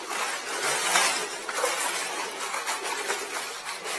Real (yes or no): no